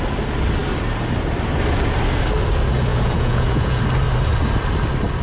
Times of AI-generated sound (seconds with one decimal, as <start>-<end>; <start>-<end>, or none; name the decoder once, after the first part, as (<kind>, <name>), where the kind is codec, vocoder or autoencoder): 2.9-3.8 (vocoder, Vocos)